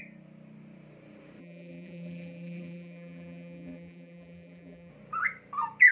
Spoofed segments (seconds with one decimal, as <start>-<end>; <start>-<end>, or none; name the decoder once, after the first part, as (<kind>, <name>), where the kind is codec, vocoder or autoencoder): 1.4-4.9 (vocoder, BigVGAN v2)